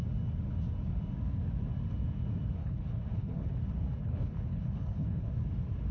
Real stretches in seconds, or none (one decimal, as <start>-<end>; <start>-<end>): 0.0-2.6; 3.6-4.0; 5.3-5.9

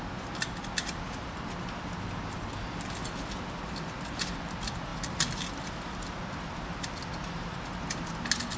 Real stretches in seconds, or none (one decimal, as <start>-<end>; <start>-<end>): 0.0-8.6